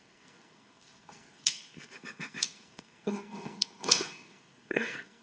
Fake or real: fake